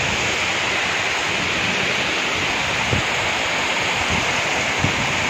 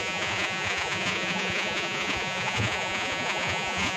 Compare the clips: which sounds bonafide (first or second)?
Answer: first